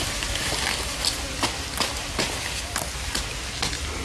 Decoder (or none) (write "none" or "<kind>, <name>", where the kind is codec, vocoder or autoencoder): none